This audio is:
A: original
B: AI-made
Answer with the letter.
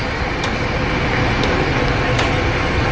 A